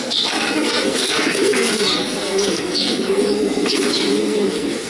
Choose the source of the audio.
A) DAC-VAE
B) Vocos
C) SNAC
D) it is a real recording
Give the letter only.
C